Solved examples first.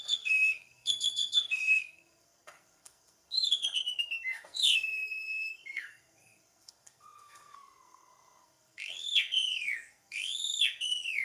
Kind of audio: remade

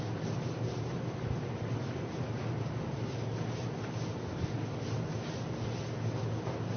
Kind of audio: recorded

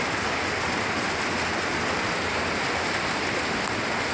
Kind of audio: recorded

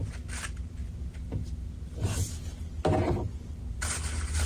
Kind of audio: recorded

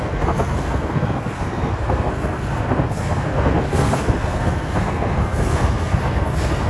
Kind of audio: remade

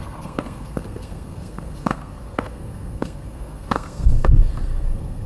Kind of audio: remade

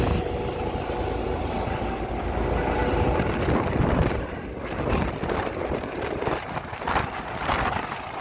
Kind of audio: recorded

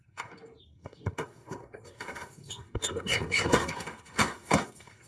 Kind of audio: remade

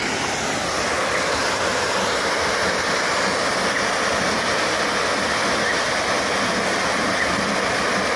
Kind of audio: recorded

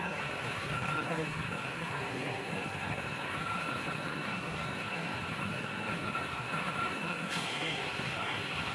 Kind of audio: remade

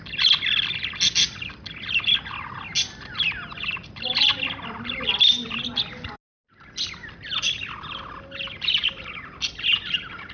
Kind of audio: recorded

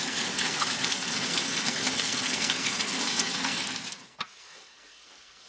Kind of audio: remade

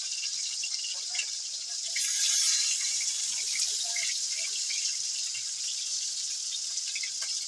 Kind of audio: recorded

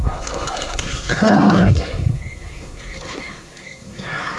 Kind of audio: remade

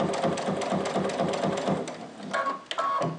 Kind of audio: recorded